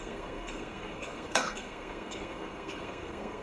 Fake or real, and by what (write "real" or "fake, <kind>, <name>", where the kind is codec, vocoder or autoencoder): fake, codec, SNAC